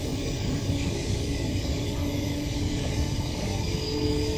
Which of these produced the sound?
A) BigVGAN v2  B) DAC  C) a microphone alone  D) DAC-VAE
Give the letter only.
B